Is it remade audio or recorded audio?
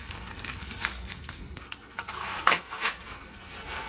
remade